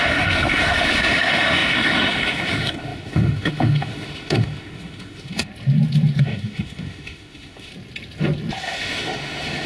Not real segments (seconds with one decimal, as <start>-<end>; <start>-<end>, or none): 0.0-5.5; 6.2-7.7; 8.6-9.7